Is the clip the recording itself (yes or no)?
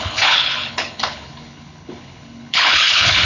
no